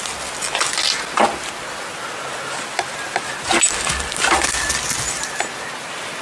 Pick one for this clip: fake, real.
real